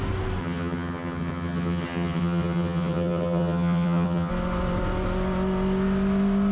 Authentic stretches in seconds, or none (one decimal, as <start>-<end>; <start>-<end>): 0.0-0.4; 4.3-6.5

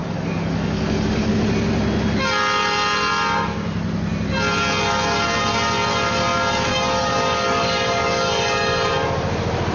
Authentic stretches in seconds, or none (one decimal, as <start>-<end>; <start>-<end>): 1.3-6.7; 8.9-9.7

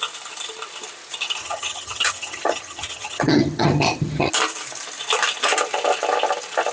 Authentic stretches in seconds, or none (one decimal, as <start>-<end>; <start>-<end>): 0.0-1.4; 4.3-6.7